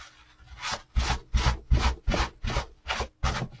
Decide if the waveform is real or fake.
real